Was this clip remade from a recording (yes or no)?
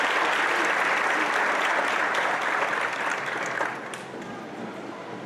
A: no